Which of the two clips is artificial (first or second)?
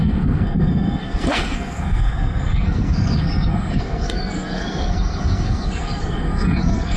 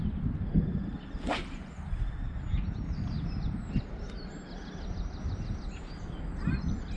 first